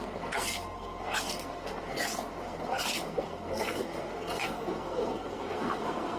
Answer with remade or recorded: remade